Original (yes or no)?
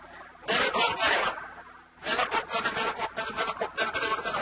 yes